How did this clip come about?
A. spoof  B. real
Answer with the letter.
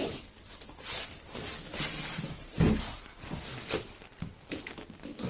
B